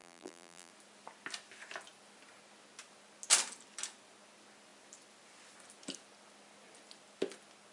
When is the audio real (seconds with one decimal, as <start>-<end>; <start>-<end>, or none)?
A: 0.7-7.7